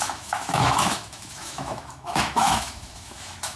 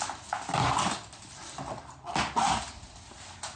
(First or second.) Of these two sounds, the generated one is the first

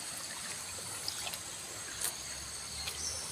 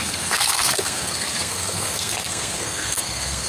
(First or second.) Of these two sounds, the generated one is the second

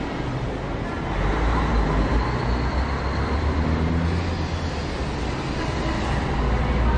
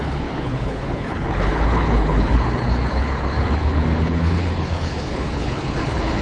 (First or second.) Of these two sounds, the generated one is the second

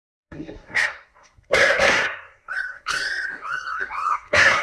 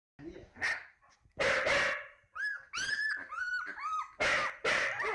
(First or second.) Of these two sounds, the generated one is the first